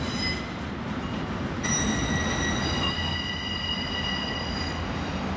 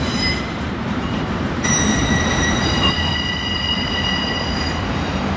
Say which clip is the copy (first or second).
second